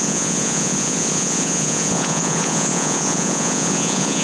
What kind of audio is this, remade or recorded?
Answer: remade